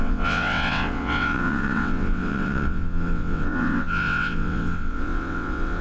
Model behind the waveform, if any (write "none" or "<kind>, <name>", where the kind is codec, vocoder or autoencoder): vocoder, WaveNeXt